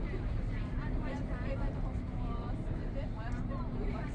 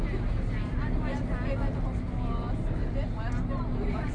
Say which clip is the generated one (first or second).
first